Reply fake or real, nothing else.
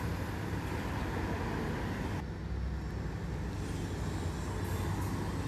real